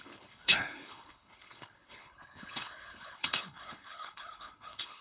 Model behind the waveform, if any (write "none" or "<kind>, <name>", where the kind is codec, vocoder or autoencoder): codec, HILCodec